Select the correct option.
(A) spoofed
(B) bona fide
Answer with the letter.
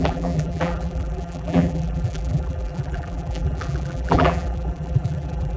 A